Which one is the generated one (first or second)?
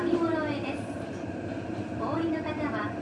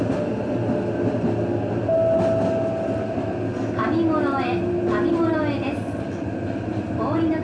first